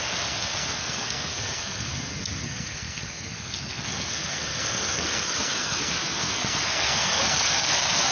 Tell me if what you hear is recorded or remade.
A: remade